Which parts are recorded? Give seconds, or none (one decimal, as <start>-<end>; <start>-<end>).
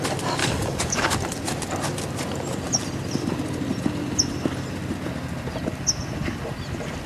0.0-0.4; 1.1-7.1